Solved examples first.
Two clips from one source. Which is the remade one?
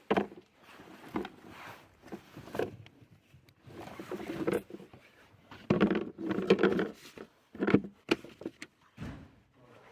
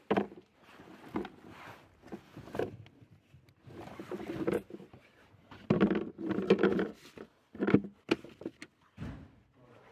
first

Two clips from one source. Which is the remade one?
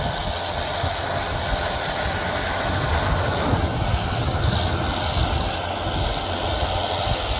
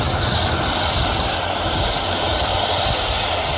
second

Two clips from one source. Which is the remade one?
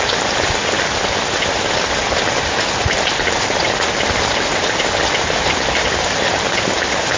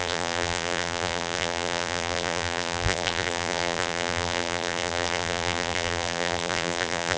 second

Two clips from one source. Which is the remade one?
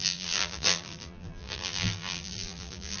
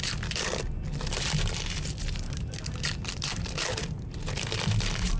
first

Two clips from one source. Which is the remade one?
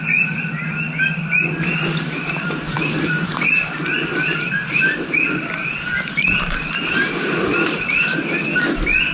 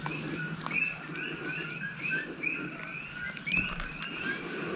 first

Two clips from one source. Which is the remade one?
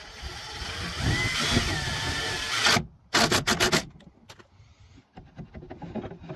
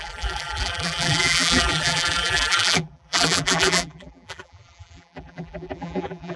second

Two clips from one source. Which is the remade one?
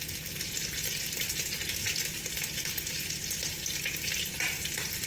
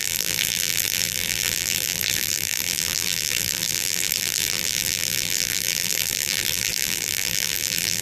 second